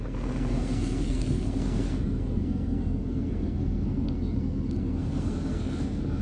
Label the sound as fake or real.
fake